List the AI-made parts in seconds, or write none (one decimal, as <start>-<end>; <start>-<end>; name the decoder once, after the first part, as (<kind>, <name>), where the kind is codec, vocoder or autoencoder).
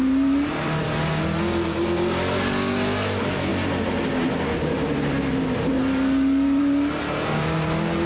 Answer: none